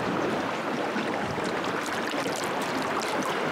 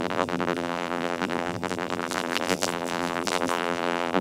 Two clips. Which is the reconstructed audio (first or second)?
second